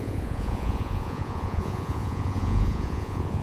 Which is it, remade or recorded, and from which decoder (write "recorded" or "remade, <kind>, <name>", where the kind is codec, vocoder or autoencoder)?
remade, vocoder, Vocos